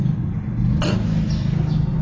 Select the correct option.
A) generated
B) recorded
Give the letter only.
B